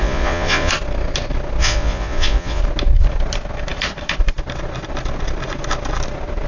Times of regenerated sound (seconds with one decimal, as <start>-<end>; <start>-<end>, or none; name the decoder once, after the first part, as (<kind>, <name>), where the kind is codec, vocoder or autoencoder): 0.0-0.7 (vocoder, Vocos); 1.6-2.6